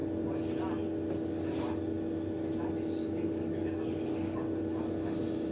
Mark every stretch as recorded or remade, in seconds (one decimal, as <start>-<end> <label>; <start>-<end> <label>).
0.0-3.0 recorded; 3.0-4.5 remade; 4.5-5.5 recorded